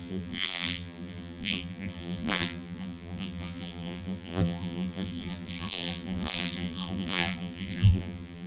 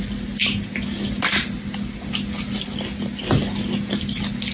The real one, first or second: second